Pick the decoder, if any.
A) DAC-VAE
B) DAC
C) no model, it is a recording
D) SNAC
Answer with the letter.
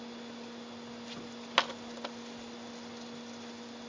C